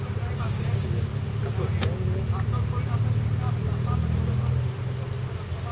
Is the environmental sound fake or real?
real